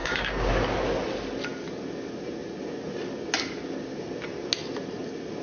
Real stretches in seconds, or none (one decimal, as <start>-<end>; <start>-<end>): 0.5-5.4